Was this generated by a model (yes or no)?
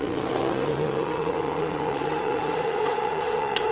yes